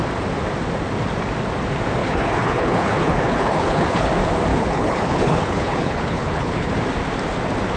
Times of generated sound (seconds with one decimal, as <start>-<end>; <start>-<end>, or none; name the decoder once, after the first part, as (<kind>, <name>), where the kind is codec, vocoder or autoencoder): 2.0-4.1 (codec, HILCodec); 4.5-6.7